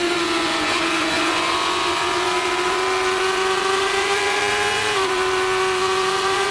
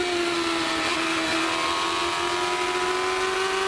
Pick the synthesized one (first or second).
first